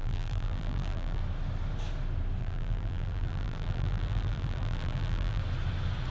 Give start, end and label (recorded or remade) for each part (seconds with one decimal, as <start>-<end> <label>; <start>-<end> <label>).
0.0-1.2 remade; 1.2-2.4 recorded; 2.4-5.4 remade; 5.4-6.1 recorded